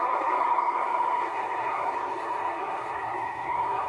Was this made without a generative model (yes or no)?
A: no